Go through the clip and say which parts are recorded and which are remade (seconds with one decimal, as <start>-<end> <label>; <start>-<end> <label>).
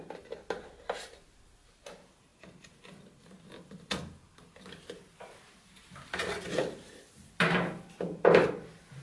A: 0.0-9.0 recorded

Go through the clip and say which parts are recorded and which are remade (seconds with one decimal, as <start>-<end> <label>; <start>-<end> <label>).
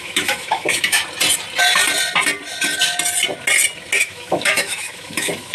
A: 0.0-1.0 remade; 1.0-4.0 recorded; 4.0-5.5 remade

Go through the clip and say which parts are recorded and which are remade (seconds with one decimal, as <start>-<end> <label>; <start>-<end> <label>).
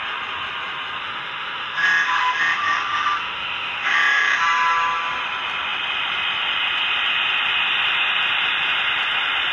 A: 0.0-1.0 recorded; 1.0-4.4 remade; 4.4-9.5 recorded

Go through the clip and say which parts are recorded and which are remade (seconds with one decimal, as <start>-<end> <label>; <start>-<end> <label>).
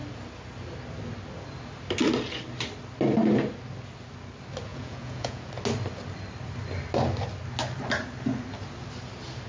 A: 0.0-4.7 recorded; 4.7-5.5 remade; 5.5-9.5 recorded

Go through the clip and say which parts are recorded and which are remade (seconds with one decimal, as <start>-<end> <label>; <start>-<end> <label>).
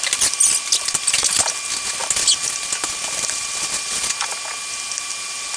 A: 0.0-5.6 recorded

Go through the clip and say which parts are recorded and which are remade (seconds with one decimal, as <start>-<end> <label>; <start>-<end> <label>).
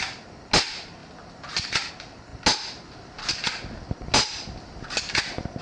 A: 0.0-5.6 recorded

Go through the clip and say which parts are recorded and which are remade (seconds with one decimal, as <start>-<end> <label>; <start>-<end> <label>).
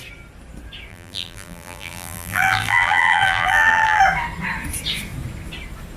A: 0.0-0.9 recorded; 0.9-4.0 remade; 4.0-6.0 recorded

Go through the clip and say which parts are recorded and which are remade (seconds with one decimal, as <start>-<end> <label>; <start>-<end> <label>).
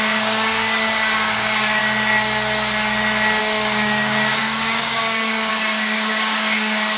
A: 0.0-1.8 remade; 1.8-3.4 recorded; 3.4-7.0 remade